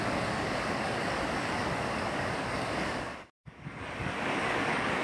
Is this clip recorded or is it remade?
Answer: remade